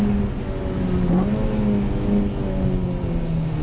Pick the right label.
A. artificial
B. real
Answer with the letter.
B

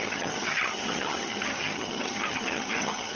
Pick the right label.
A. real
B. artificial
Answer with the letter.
B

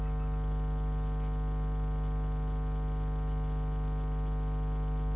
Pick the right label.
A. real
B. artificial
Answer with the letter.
A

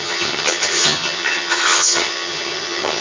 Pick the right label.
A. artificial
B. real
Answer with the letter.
A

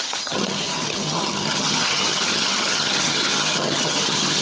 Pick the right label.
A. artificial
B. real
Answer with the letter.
A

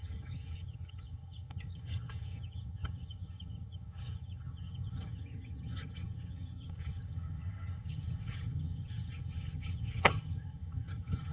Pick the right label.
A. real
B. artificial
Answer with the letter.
B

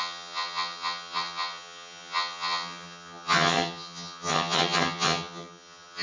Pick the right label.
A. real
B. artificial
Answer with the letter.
B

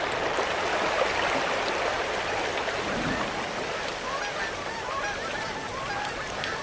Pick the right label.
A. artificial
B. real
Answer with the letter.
B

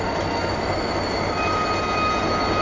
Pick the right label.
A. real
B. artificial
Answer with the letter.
A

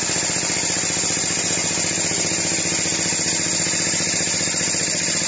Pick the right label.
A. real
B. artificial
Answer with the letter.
A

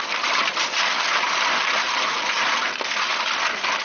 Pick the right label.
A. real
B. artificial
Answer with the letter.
A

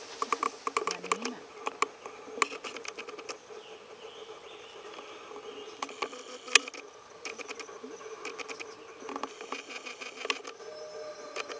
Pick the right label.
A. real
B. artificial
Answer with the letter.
A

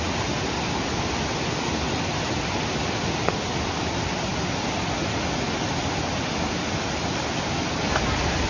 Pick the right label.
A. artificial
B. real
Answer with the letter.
B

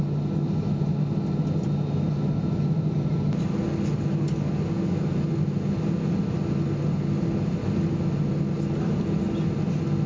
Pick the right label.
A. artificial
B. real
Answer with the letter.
B